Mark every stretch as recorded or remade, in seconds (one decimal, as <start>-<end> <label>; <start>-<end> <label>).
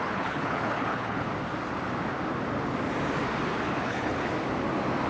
0.0-1.3 remade; 1.3-3.6 recorded; 3.6-4.3 remade; 4.3-5.1 recorded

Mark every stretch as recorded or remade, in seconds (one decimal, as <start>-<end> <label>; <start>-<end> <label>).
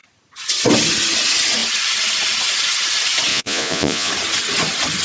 0.0-3.3 recorded; 3.3-4.1 remade; 4.1-5.0 recorded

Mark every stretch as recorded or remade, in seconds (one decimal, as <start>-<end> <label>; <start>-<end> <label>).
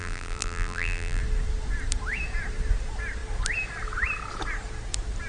0.0-1.2 remade; 1.2-5.3 recorded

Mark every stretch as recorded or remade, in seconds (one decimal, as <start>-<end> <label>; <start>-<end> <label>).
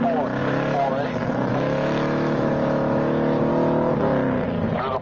0.0-1.5 recorded; 1.5-3.5 remade; 3.5-5.0 recorded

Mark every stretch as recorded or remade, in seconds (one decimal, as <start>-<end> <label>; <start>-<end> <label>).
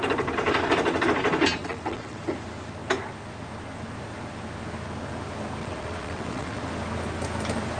0.0-1.6 recorded; 1.6-2.2 remade; 2.2-5.6 recorded; 5.6-6.6 remade; 6.6-7.8 recorded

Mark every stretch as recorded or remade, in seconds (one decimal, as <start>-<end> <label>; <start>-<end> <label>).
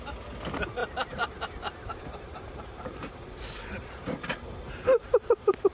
0.0-0.8 recorded; 0.8-4.2 remade; 4.2-5.0 recorded; 5.0-5.7 remade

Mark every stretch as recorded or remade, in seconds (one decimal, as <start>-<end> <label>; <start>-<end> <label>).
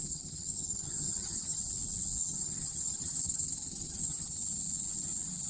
0.0-1.6 remade; 1.6-2.2 recorded; 2.2-4.4 remade; 4.4-5.5 recorded